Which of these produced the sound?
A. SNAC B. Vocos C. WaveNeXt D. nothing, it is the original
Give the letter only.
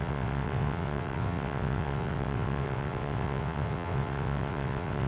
C